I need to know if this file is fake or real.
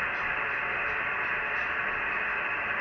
fake